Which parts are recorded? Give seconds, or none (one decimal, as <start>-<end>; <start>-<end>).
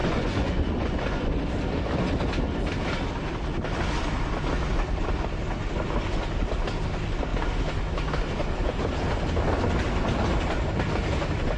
1.3-11.6